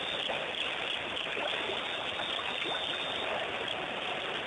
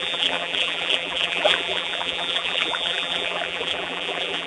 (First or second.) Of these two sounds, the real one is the first